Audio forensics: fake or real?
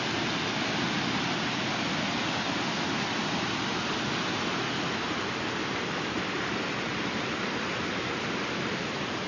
real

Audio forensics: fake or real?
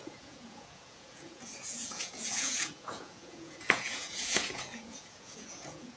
fake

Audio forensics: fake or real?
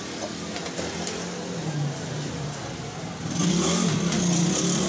real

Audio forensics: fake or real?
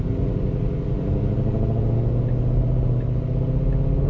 real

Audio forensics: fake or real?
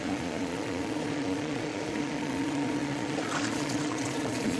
fake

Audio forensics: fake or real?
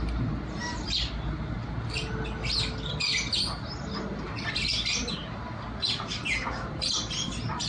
real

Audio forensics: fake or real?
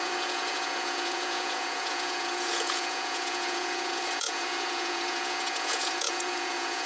fake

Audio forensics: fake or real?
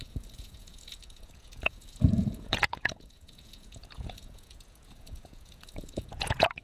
fake